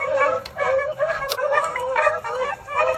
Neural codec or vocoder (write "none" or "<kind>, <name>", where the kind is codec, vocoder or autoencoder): codec, SNAC